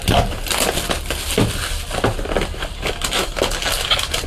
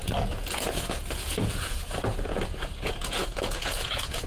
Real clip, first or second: first